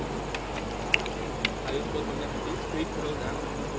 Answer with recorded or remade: recorded